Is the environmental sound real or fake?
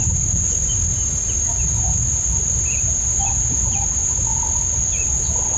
real